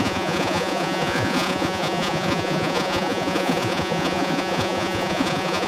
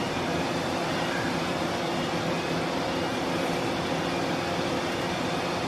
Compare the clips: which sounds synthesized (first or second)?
first